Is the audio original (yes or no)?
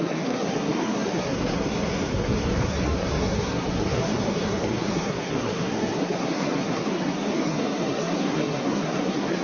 no